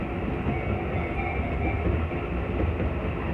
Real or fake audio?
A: real